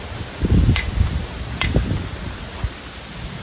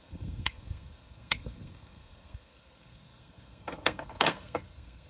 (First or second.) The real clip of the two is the first